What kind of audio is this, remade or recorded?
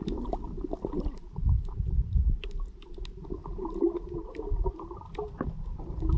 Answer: recorded